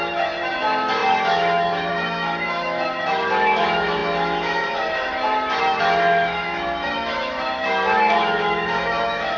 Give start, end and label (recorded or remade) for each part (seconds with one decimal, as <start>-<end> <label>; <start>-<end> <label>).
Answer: 0.0-9.4 remade